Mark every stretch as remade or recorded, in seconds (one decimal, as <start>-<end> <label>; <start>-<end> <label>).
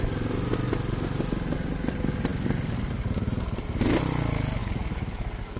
0.0-4.6 recorded; 4.6-5.6 remade